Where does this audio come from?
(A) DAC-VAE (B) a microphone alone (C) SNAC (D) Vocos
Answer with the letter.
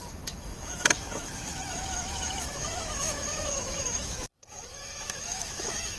A